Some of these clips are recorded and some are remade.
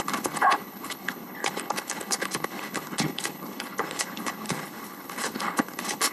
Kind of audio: remade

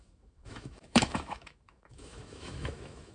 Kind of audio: remade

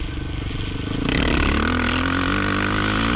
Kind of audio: recorded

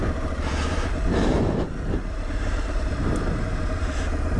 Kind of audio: remade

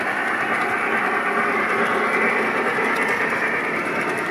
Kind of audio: remade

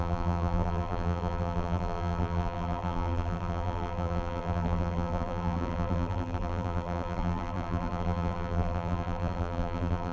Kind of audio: remade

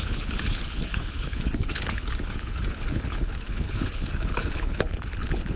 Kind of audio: remade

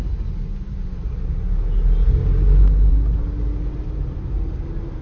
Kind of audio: recorded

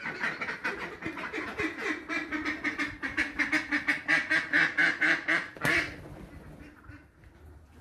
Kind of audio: recorded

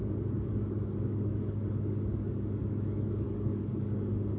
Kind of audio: remade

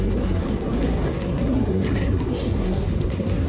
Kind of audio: remade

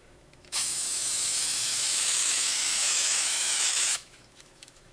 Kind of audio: remade